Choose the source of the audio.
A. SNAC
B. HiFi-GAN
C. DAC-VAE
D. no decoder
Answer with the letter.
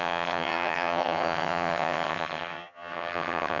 B